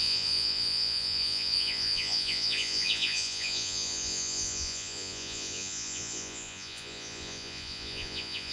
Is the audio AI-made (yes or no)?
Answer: yes